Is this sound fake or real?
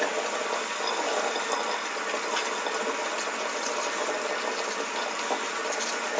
real